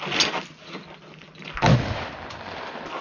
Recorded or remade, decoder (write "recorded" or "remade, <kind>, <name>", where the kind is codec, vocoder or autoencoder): recorded